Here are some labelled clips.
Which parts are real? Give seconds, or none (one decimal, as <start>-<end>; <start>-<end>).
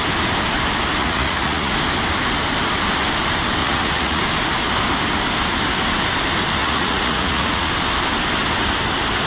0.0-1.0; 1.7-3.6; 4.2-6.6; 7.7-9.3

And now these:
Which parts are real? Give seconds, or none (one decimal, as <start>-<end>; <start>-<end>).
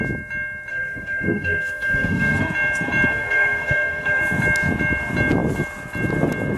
0.0-0.7; 2.4-3.1; 4.2-6.6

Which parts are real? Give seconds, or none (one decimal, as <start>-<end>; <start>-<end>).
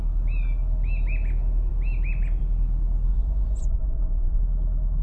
0.0-3.1; 4.4-5.0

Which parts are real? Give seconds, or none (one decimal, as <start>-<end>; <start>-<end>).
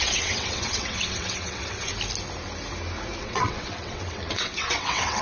1.9-3.2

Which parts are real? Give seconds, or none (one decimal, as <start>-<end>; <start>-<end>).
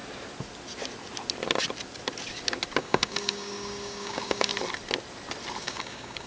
0.0-2.8; 4.5-5.6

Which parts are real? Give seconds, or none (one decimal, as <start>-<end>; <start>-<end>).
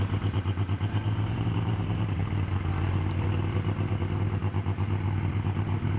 2.2-2.9; 4.4-5.3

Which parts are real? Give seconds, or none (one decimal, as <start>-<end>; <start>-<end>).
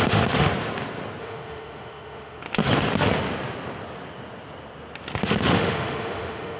0.5-1.2; 2.4-5.2